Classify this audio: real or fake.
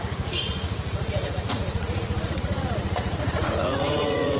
fake